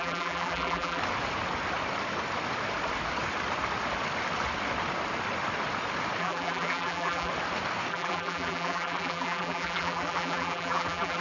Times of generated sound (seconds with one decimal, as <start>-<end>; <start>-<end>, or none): 0.0-1.0; 6.2-7.3; 7.9-11.2

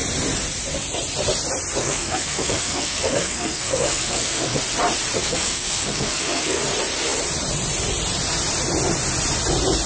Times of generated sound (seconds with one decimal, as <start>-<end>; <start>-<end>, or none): 1.8-4.6; 5.2-6.6

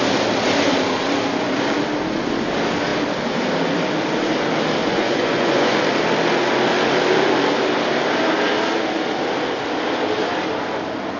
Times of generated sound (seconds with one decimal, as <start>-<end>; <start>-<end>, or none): 4.8-5.8

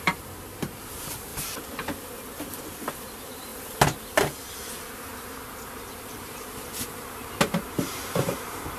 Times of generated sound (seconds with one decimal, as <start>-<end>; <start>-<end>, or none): 0.0-1.3; 2.9-3.5; 5.9-8.8

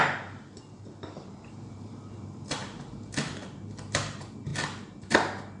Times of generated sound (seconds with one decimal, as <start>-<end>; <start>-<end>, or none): 0.0-4.5